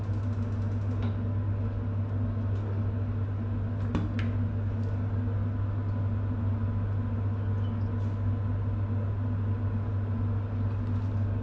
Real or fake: real